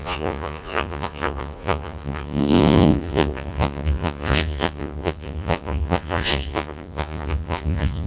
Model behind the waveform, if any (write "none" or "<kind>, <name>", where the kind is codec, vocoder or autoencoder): vocoder, Vocos